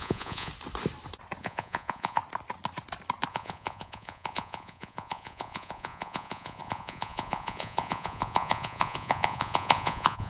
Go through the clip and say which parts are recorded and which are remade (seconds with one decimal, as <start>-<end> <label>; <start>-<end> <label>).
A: 0.0-0.5 remade; 0.5-1.4 recorded; 1.4-2.2 remade; 2.2-3.3 recorded; 3.3-10.3 remade